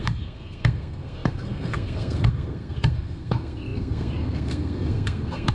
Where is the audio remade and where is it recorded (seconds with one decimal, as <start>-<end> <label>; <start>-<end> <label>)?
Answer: 0.0-5.5 remade